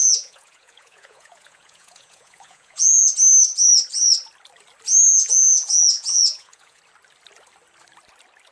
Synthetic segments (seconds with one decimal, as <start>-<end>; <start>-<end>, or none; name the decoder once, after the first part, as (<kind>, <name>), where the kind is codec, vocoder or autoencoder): 0.0-3.1 (vocoder, Vocos); 5.1-6.8